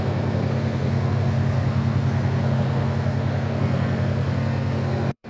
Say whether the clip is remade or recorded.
remade